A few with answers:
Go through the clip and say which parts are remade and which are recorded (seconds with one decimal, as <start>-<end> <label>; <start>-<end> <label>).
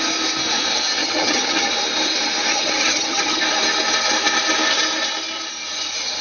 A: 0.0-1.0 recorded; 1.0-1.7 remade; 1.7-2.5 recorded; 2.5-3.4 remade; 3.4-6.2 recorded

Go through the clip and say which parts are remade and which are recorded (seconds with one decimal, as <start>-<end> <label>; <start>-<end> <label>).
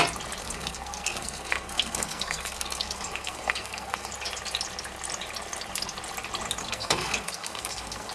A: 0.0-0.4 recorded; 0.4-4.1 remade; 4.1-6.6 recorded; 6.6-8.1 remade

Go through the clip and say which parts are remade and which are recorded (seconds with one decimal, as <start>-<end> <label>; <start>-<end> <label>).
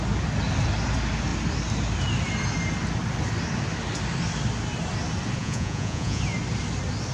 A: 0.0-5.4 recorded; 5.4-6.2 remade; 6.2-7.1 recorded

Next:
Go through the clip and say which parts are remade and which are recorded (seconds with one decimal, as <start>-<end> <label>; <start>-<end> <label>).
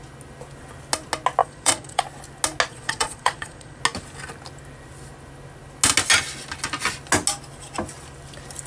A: 0.0-1.4 recorded; 1.4-2.0 remade; 2.0-2.7 recorded; 2.7-3.8 remade; 3.8-8.7 recorded